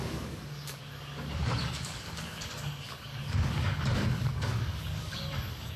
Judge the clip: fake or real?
fake